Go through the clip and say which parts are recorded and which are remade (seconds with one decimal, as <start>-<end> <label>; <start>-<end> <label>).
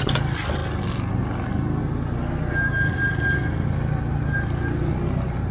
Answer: 0.0-5.5 recorded